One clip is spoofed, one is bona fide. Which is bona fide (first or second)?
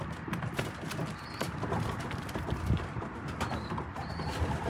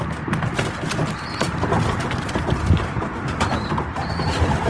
second